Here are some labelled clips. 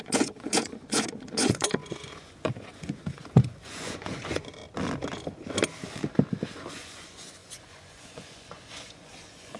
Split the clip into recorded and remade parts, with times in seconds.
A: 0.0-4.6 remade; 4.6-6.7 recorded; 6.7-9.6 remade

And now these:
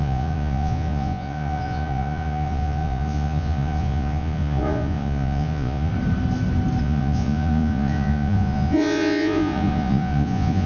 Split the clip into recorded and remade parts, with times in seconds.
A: 0.0-5.9 remade; 5.9-6.8 recorded; 6.8-10.7 remade